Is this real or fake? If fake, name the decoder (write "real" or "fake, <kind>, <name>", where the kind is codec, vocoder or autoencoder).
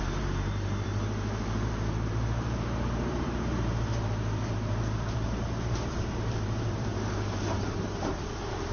fake, vocoder, BigVGAN v2